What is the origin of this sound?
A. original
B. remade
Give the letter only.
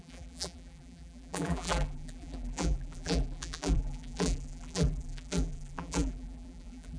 B